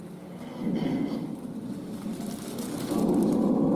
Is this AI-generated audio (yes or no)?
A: no